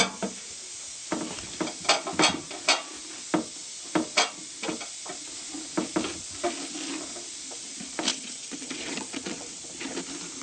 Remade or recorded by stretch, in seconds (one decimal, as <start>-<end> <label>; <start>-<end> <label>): 0.0-8.1 recorded; 8.1-9.6 remade; 9.6-10.4 recorded